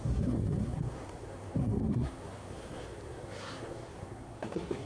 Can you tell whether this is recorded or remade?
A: remade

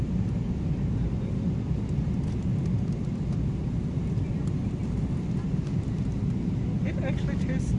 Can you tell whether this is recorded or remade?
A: recorded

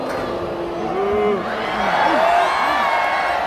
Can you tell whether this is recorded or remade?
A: recorded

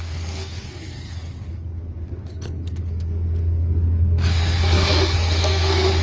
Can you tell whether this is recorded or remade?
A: remade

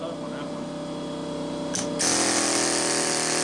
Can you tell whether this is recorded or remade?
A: recorded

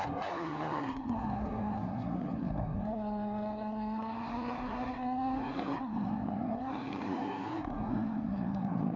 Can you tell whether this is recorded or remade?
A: remade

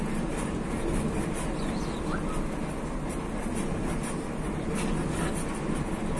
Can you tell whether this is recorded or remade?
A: recorded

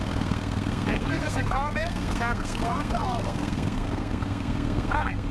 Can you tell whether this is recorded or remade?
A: remade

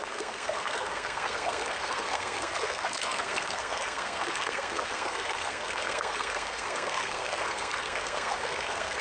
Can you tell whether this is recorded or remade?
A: remade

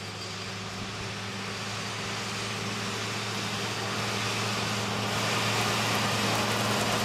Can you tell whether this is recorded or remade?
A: recorded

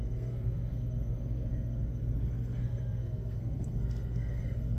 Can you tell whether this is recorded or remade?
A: remade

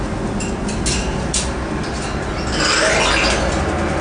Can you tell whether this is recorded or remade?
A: recorded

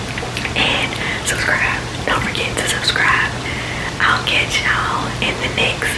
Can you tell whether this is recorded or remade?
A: recorded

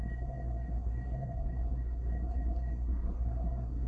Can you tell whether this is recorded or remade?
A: remade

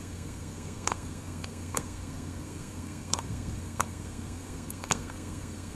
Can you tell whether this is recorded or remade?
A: remade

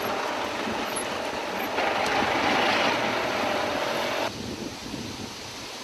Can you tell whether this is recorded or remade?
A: recorded